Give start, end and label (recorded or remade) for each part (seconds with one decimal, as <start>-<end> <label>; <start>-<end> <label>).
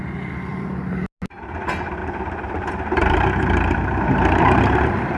0.0-0.5 recorded; 0.5-1.0 remade; 1.0-2.0 recorded; 2.0-5.2 remade